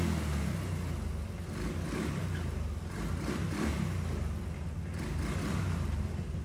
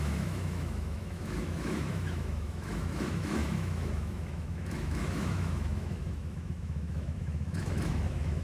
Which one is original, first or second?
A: first